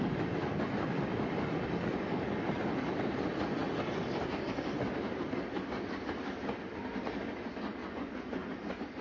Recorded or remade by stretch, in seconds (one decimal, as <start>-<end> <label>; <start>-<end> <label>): 0.0-7.8 recorded; 7.8-8.5 remade; 8.5-9.0 recorded